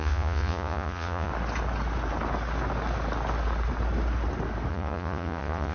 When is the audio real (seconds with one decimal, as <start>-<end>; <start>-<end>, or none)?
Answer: 1.3-4.7